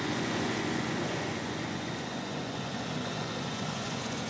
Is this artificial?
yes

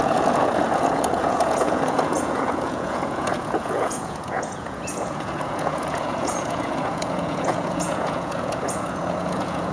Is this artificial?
yes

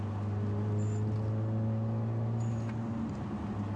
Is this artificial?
no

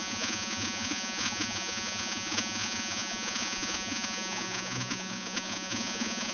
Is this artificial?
yes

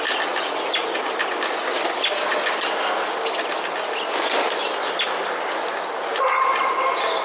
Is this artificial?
no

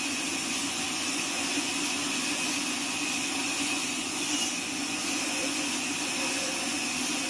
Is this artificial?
yes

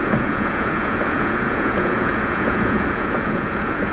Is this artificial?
yes